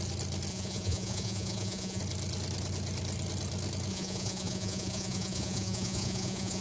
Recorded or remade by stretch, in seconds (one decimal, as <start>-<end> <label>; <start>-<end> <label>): 0.0-0.5 recorded; 0.5-2.0 remade; 2.0-3.9 recorded; 3.9-6.6 remade

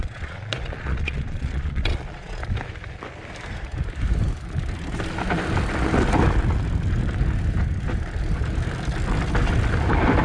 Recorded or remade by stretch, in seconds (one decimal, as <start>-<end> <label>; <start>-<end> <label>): 0.0-2.4 remade; 2.4-10.2 recorded